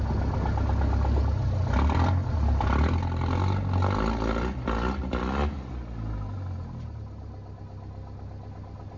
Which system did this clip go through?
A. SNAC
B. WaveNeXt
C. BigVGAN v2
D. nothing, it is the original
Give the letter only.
D